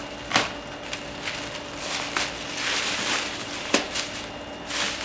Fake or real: real